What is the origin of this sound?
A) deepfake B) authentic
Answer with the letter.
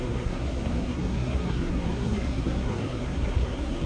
A